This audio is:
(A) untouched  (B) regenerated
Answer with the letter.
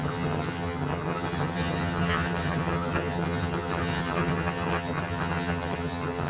B